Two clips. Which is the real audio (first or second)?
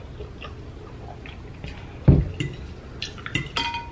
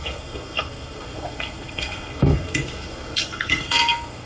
first